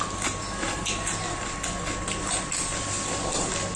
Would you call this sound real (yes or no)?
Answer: yes